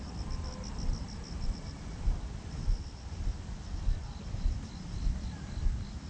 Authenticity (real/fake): real